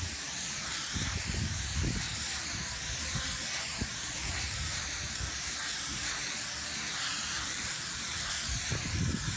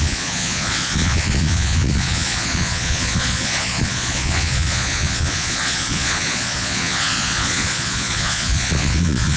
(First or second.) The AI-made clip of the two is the second